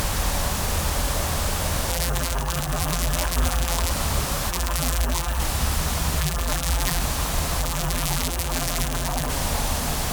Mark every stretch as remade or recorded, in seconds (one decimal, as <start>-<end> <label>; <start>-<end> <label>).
0.0-1.9 recorded; 1.9-3.9 remade; 3.9-4.5 recorded; 4.5-5.4 remade; 5.4-6.2 recorded; 6.2-7.0 remade; 7.0-7.6 recorded; 7.6-9.3 remade; 9.3-10.1 recorded